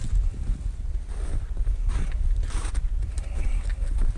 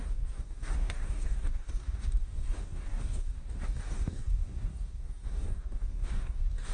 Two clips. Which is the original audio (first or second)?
first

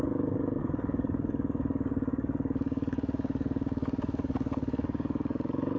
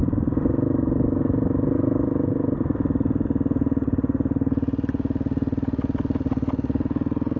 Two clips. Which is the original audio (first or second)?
second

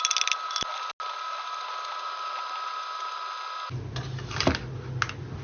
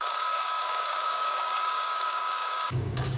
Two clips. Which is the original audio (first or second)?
first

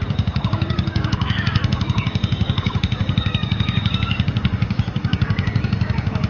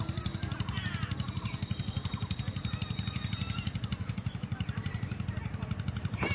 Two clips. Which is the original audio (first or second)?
second